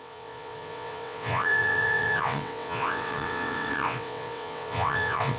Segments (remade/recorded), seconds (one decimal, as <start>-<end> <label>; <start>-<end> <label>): 0.0-5.4 remade